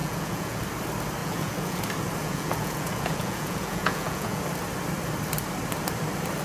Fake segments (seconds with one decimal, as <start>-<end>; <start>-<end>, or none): 0.0-0.6; 1.2-1.8; 2.2-4.4